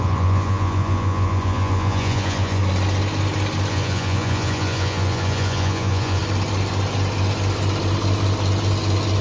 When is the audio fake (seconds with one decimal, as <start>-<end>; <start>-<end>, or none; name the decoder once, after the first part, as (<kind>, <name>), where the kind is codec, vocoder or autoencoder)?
0.0-2.6 (vocoder, Vocos); 3.7-6.2